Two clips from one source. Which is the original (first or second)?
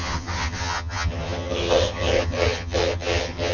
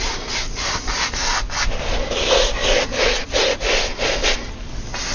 second